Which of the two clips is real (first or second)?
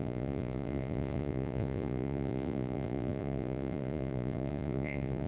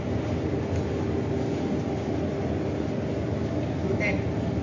second